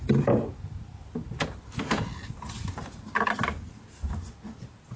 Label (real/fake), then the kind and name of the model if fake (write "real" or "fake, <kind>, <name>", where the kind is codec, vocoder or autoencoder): real